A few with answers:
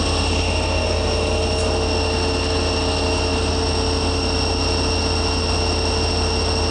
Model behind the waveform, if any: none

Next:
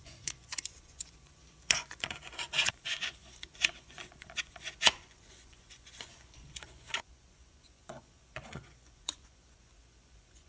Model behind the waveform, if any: vocoder, Vocos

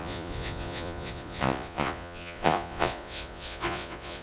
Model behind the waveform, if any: vocoder, Vocos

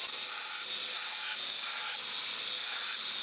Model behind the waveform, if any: none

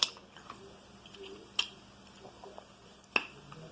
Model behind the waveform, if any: none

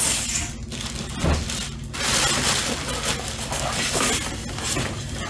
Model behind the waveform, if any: none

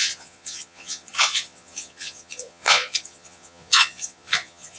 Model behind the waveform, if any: vocoder, Vocos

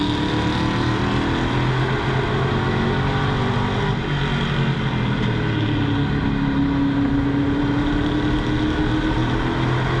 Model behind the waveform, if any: none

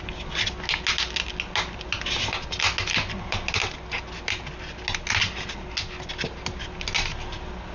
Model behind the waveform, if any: none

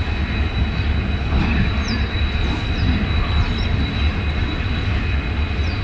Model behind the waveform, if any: none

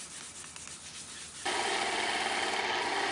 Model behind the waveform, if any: none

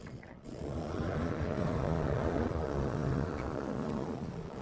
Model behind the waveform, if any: vocoder, Vocos